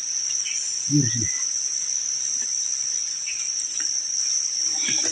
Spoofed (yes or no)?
no